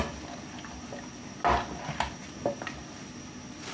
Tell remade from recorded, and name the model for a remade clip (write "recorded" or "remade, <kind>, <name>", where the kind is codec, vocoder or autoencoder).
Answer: recorded